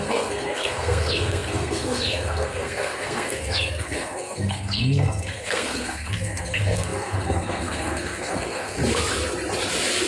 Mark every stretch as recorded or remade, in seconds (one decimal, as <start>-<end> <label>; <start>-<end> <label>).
0.0-8.8 remade; 8.8-10.1 recorded